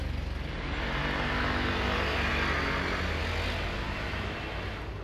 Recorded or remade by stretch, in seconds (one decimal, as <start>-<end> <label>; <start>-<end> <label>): 0.0-5.0 recorded